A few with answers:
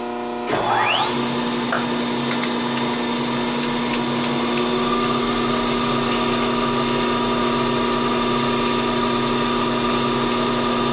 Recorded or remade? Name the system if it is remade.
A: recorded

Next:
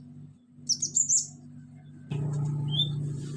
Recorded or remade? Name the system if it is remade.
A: recorded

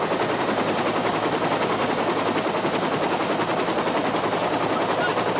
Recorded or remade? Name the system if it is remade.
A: recorded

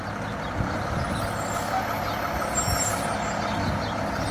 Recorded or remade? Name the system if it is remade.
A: recorded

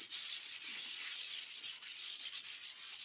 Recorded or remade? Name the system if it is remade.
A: remade, vocoder, Vocos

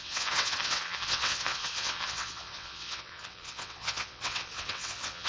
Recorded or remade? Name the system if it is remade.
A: remade, vocoder, WaveNeXt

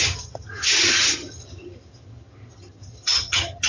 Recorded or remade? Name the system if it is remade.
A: remade, vocoder, HiFi-GAN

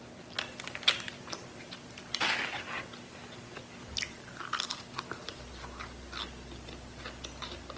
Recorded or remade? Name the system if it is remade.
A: recorded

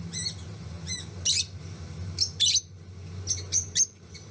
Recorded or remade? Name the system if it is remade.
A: recorded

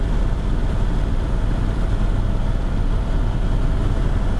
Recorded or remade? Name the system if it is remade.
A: remade, vocoder, BigVGAN v2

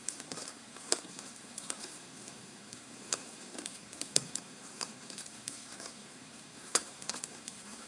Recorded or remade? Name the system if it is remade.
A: remade, codec, SNAC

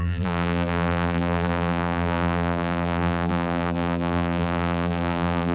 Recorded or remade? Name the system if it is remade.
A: remade, vocoder, BigVGAN v2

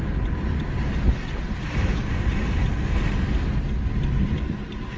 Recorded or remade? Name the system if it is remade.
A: recorded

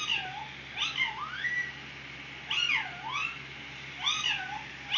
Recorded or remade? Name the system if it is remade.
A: recorded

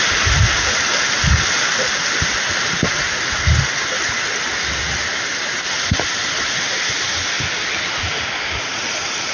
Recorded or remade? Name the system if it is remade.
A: recorded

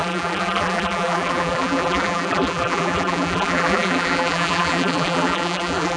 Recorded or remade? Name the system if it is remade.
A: remade, vocoder, BigVGAN v2